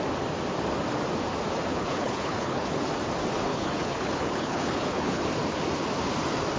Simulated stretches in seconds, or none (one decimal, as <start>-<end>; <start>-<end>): 1.7-2.9; 3.5-5.2